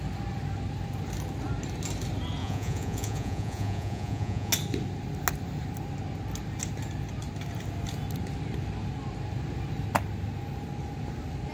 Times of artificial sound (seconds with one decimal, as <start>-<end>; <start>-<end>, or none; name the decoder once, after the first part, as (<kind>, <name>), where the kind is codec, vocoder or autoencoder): 2.4-4.5 (vocoder, Vocos)